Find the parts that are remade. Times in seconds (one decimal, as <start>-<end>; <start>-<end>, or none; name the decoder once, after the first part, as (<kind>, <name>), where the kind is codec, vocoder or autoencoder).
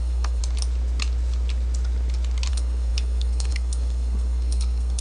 0.0-0.4 (codec, SNAC); 2.5-5.0